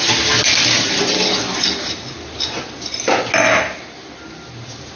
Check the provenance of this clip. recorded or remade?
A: recorded